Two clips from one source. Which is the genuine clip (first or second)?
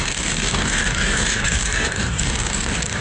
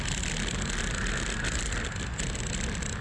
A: second